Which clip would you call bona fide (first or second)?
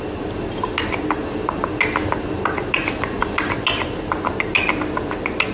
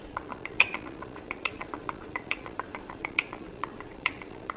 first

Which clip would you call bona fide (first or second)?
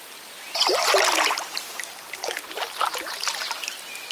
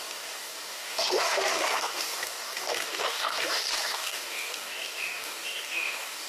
first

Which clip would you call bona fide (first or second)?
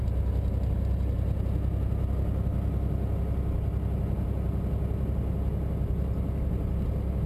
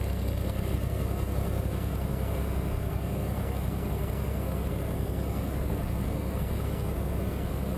first